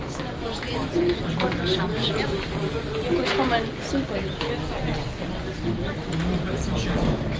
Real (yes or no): yes